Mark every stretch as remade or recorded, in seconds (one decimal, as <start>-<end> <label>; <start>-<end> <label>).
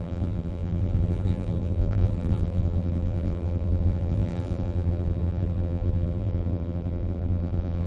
0.0-7.9 remade